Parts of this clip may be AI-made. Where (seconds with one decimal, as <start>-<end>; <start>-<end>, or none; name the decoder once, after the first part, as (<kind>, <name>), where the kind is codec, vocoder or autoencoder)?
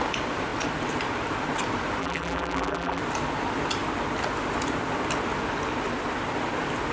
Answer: 2.0-3.0 (vocoder, BigVGAN v2)